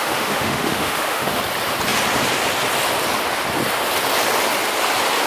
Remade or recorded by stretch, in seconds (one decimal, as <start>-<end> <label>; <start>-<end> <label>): 0.0-1.4 remade; 1.4-5.3 recorded